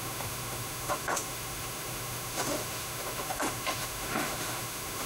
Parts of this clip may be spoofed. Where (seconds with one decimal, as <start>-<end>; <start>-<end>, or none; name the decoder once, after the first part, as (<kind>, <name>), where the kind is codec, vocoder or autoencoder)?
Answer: 0.0-5.1 (autoencoder, DAC-VAE)